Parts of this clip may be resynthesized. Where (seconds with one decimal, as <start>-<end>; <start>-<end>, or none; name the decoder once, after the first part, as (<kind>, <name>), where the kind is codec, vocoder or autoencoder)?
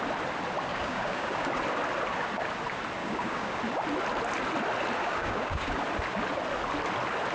0.7-1.5 (codec, DAC); 3.0-3.6; 5.0-5.7